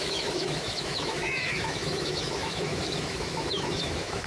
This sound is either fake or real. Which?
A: fake